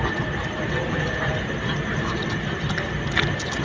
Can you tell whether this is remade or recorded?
recorded